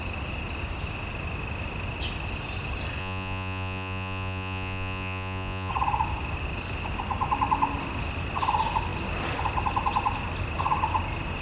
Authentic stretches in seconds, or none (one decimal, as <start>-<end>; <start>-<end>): 0.0-3.0; 5.7-11.4